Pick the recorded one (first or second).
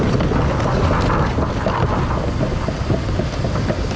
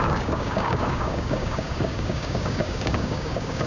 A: first